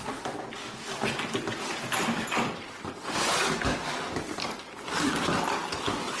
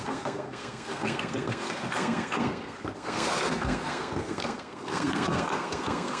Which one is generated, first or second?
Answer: second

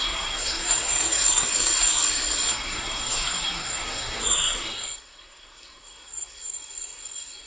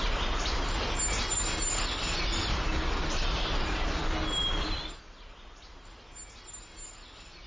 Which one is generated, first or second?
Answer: first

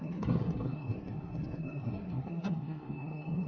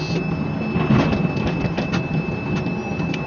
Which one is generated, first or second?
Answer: first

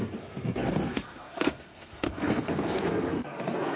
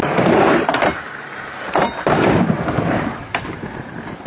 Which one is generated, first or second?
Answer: first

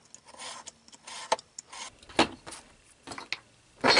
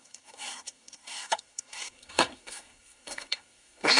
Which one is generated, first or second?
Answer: second